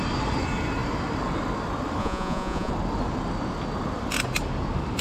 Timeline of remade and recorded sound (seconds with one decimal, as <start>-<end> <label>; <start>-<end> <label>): 0.0-2.0 recorded; 2.0-2.7 remade; 2.7-5.0 recorded